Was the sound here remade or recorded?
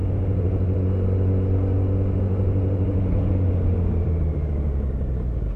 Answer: recorded